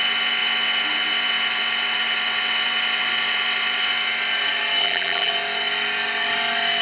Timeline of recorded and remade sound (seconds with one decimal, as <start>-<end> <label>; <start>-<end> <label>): 0.0-4.8 recorded; 4.8-5.3 remade; 5.3-6.8 recorded